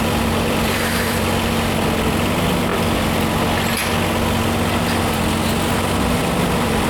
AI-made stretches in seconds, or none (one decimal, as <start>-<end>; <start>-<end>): 0.0-3.8; 5.7-6.9